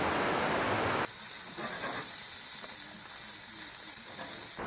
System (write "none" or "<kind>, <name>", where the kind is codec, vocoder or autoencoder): none